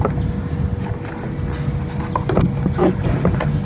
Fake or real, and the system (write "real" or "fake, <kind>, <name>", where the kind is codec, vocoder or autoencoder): real